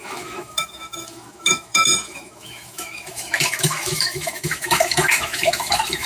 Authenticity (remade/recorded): remade